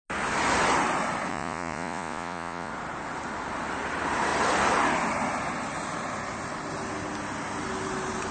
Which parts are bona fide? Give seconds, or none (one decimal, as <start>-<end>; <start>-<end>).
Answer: 0.0-1.3; 2.7-8.3